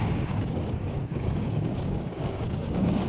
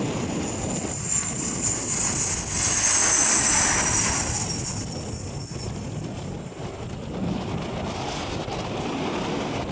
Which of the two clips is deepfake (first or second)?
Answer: first